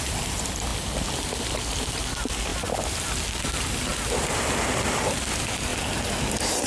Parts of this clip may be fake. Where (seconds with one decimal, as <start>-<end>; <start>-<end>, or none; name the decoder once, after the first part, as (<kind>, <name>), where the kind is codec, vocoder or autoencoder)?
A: none

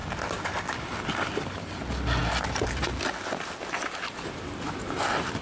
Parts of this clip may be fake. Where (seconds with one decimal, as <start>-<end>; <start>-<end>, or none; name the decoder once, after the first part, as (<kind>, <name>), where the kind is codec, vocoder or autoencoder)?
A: none

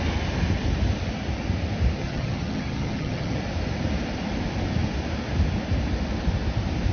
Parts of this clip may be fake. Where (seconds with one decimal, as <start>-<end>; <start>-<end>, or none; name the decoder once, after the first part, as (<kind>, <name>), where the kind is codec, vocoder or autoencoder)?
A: 2.0-3.4 (vocoder, HiFi-GAN)

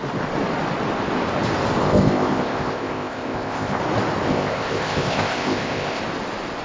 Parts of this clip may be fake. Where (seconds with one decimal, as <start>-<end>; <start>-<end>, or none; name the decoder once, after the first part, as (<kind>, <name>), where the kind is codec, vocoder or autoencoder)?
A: 1.8-3.8 (codec, ZipCodec); 4.3-6.0

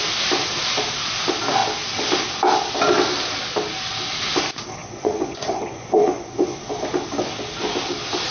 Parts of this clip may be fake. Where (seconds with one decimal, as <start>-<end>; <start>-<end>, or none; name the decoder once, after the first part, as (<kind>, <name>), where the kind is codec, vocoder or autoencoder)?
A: 4.8-6.6 (vocoder, Vocos)

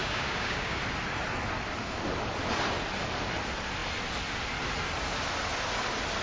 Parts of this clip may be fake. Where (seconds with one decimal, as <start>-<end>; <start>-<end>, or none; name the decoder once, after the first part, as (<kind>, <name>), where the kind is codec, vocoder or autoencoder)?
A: 0.0-0.8 (codec, DAC)